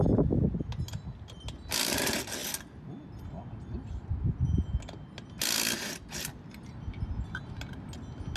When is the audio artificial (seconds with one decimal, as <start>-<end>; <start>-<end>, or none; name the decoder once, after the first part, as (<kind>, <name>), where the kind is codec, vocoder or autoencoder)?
none